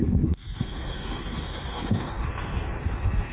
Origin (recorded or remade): remade